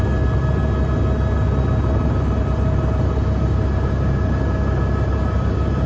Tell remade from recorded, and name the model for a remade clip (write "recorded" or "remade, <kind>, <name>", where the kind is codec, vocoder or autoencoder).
recorded